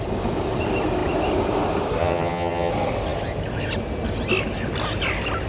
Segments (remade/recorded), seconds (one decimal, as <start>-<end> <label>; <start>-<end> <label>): 0.0-2.0 recorded; 2.0-2.7 remade; 2.7-5.5 recorded

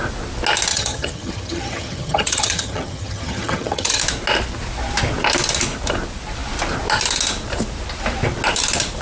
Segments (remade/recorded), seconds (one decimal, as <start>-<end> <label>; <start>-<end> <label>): 0.0-0.7 recorded; 0.7-4.0 remade; 4.0-9.0 recorded

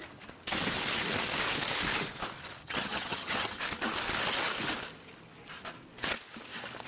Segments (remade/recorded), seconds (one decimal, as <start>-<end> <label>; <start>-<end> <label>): 0.0-2.6 recorded; 2.6-3.6 remade; 3.6-6.9 recorded

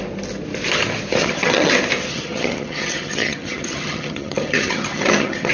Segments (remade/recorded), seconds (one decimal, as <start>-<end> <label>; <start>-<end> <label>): 0.0-1.2 recorded; 1.2-1.7 remade; 1.7-2.1 recorded; 2.1-5.5 remade

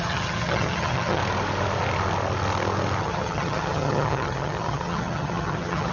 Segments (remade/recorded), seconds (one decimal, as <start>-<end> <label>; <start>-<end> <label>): 0.0-1.2 remade; 1.2-3.0 recorded; 3.0-5.9 remade